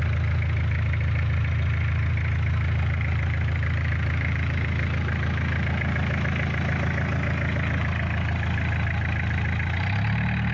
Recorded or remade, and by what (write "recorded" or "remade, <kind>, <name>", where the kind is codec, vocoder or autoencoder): recorded